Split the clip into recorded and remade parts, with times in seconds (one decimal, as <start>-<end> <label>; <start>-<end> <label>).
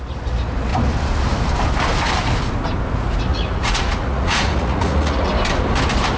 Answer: 0.0-3.3 recorded; 3.3-5.3 remade; 5.3-6.2 recorded